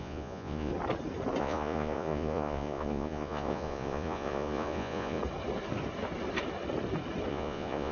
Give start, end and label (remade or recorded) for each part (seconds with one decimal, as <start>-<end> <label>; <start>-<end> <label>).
0.0-0.7 remade; 0.7-1.4 recorded; 1.4-5.2 remade; 5.2-7.3 recorded; 7.3-7.9 remade